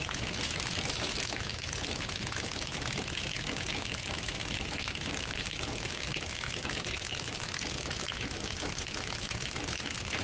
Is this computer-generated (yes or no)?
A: yes